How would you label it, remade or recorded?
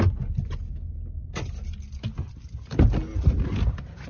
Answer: recorded